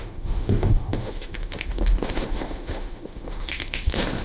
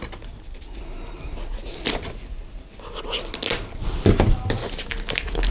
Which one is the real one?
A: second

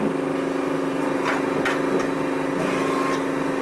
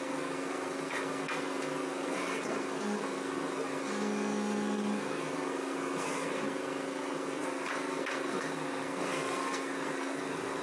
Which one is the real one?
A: first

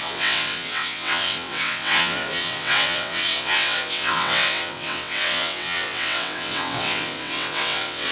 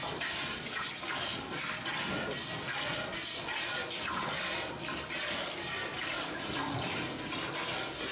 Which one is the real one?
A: second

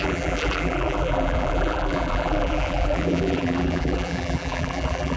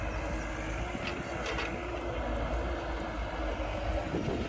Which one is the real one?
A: second